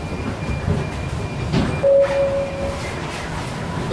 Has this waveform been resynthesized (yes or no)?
no